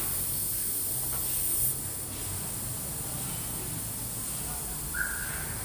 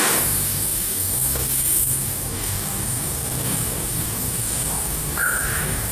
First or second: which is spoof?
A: second